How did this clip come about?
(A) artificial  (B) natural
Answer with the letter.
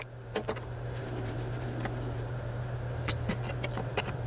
A